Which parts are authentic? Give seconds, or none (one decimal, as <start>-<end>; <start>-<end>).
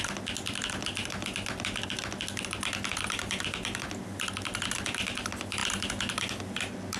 0.0-7.0